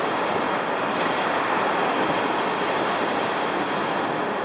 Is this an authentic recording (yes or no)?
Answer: yes